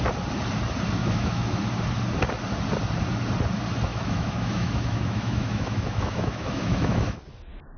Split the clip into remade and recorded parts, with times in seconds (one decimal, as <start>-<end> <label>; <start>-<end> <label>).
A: 0.0-1.0 recorded; 1.0-1.6 remade; 1.6-3.9 recorded; 3.9-7.2 remade; 7.2-7.8 recorded